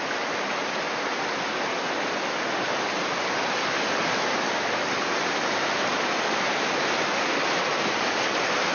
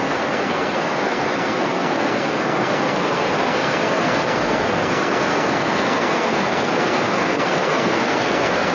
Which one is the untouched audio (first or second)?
first